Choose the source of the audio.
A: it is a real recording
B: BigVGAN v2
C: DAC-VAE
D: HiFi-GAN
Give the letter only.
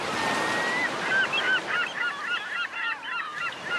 A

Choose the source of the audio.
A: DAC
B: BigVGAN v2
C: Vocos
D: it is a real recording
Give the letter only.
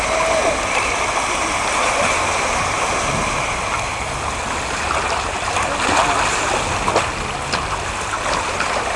D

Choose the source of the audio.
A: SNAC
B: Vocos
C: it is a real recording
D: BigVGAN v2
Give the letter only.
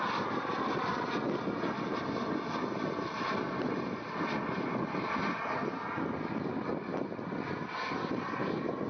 C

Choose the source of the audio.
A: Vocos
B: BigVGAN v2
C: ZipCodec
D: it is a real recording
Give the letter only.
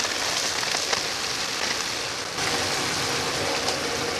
D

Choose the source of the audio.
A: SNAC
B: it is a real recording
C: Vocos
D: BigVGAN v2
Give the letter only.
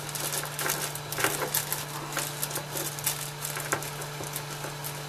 B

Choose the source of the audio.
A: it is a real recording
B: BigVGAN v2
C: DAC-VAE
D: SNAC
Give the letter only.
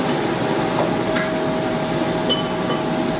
A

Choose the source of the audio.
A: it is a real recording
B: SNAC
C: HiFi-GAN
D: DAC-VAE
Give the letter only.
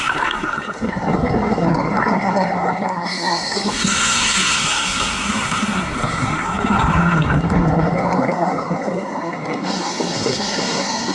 B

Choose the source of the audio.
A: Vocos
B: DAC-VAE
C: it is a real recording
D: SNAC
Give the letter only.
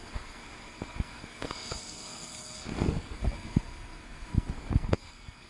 D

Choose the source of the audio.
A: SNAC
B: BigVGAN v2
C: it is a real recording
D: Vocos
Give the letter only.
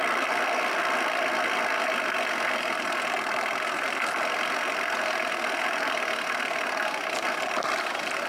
C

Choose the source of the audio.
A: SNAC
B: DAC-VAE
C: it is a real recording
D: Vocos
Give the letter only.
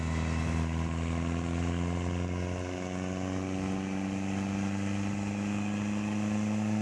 C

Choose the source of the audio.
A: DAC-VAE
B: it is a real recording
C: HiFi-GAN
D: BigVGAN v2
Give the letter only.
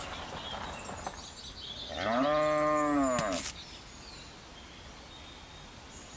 B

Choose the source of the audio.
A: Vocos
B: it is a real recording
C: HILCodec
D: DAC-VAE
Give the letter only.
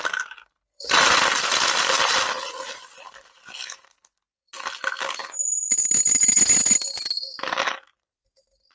B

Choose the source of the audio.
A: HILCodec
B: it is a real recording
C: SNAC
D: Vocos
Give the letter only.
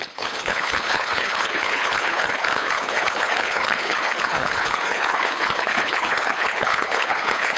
A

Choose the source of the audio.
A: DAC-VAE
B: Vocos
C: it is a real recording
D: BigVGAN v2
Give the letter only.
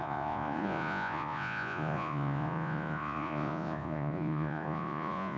B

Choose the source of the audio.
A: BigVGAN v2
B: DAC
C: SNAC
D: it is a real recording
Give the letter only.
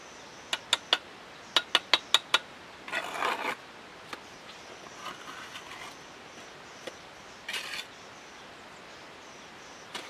D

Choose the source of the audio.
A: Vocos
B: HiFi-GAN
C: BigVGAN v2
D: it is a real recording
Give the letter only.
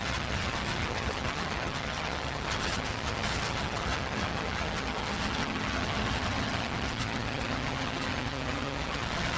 B